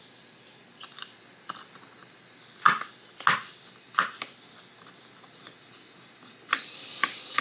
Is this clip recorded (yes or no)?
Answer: yes